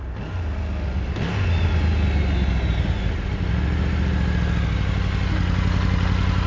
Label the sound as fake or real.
real